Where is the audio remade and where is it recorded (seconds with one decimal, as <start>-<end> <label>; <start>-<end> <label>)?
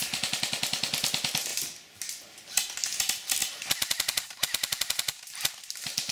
0.0-6.1 recorded